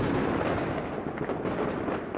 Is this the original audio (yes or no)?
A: yes